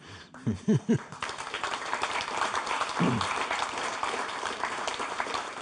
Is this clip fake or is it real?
fake